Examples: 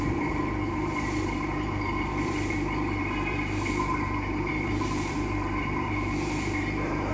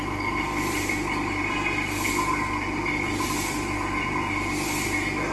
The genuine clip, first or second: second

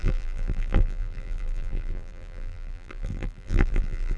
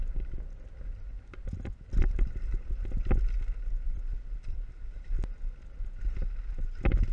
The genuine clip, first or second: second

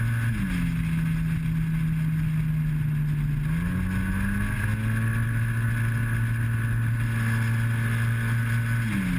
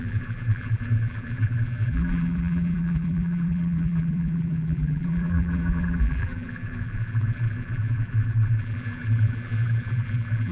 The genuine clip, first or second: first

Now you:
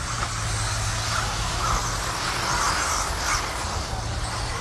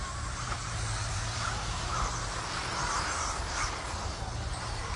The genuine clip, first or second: first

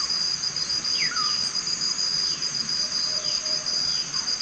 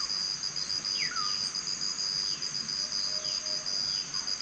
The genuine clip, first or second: second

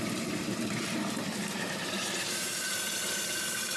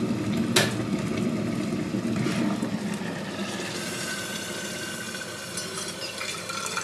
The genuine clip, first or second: second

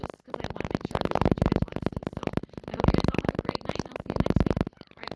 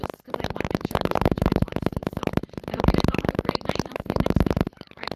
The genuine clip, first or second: first